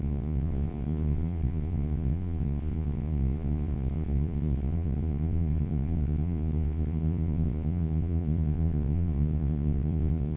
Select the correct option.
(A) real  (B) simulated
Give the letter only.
B